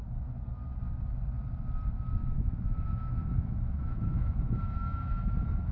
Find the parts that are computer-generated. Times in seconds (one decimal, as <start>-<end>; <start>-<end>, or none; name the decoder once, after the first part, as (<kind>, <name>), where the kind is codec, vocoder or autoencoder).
2.2-5.7 (autoencoder, DAC-VAE)